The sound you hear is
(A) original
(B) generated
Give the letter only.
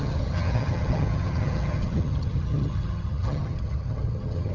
B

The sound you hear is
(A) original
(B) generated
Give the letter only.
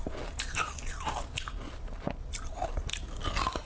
A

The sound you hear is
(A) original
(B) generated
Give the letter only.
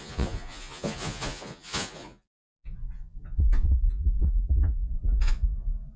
B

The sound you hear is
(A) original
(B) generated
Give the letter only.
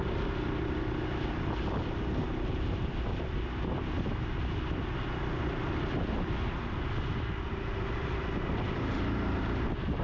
A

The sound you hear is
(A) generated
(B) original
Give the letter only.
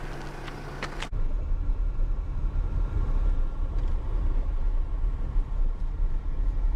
B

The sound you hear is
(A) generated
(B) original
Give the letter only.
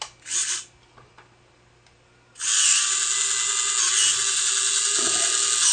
B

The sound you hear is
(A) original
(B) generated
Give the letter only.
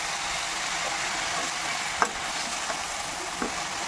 A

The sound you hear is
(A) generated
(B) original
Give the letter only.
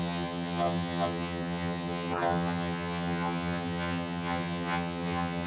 A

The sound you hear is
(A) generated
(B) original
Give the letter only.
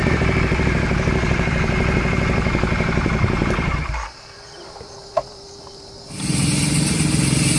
A